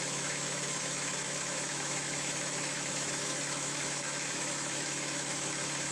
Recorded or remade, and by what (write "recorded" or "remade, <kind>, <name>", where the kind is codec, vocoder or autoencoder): remade, autoencoder, DAC-VAE